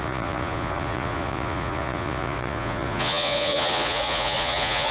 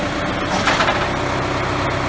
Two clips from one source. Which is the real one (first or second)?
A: second